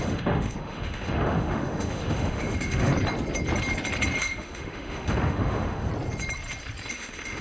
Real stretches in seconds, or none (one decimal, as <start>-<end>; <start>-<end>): 2.9-4.2; 5.9-6.9